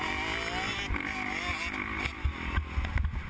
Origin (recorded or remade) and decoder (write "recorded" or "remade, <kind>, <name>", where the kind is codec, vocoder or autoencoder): recorded